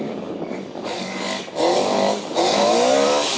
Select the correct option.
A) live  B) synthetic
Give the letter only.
B